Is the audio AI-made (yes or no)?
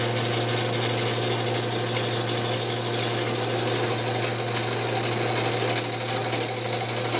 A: no